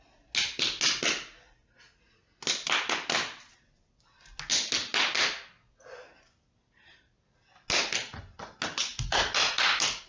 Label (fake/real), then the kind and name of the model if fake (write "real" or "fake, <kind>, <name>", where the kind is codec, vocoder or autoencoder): real